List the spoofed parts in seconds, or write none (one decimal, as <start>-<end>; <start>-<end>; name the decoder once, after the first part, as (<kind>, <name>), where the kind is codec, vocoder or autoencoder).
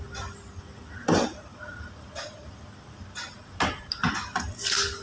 none